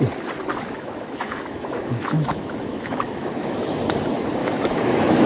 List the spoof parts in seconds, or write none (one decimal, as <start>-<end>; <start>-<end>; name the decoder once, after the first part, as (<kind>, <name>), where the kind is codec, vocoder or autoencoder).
0.5-3.7 (autoencoder, DAC-VAE); 4.4-5.3